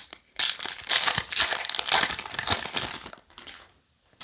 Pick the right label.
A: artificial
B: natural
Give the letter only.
B